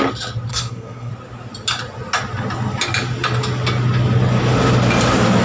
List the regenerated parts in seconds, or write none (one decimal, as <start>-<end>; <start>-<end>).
0.5-1.1